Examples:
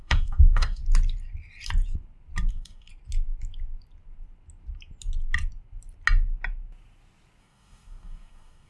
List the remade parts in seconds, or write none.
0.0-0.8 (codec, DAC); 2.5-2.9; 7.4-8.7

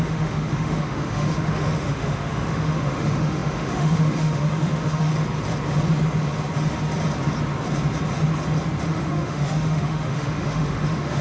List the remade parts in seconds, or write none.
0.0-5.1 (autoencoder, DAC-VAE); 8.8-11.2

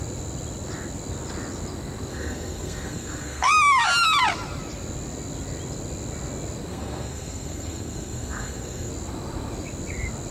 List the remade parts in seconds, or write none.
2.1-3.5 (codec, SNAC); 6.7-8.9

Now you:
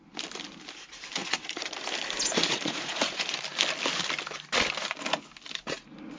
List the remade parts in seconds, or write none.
1.2-1.7 (vocoder, Vocos); 2.4-3.4